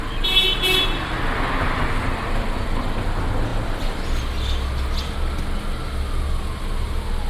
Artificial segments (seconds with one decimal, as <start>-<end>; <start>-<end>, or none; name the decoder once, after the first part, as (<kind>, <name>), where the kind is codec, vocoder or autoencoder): none